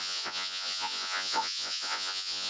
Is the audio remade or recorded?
remade